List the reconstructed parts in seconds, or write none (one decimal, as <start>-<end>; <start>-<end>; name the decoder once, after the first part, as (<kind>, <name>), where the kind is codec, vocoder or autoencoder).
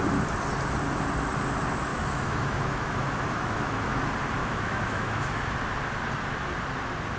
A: 1.9-4.0 (autoencoder, DAC-VAE); 4.4-5.5